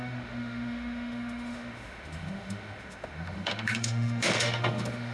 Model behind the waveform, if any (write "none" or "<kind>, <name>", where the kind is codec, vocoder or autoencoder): autoencoder, DAC-VAE